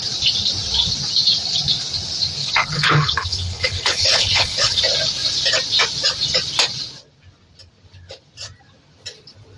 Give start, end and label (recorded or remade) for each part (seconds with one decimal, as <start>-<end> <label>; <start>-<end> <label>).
0.0-2.4 recorded; 2.4-4.8 remade; 4.8-9.6 recorded